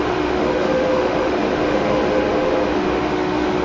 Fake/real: fake